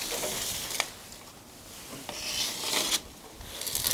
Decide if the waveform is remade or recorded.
recorded